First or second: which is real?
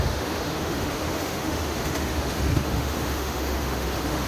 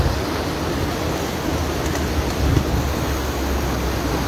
second